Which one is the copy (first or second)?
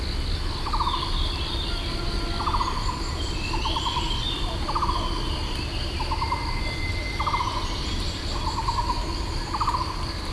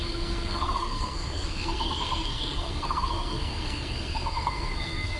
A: second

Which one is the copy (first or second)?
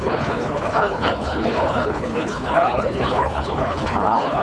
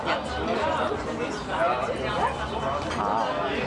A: first